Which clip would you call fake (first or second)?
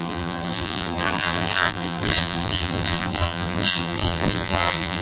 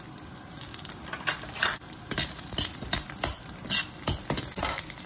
first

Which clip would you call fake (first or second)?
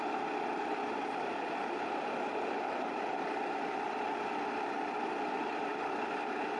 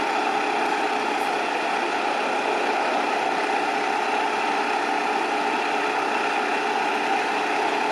first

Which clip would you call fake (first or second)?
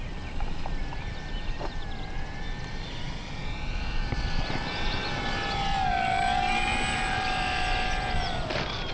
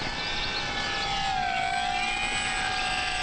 first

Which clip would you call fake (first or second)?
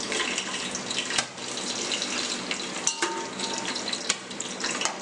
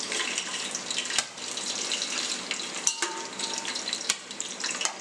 second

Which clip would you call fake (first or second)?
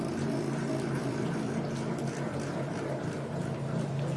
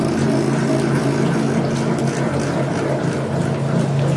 first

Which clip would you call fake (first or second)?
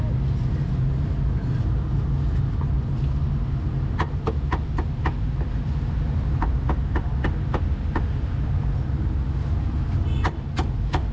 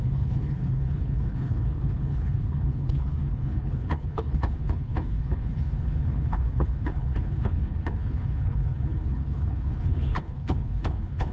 second